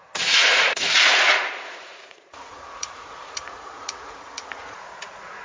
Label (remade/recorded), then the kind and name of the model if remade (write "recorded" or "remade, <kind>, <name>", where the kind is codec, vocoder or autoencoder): remade, vocoder, Vocos